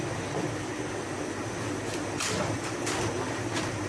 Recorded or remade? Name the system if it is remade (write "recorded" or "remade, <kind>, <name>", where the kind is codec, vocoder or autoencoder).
recorded